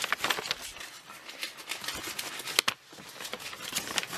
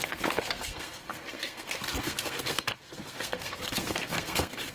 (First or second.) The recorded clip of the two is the first